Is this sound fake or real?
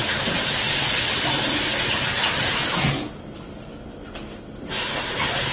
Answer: real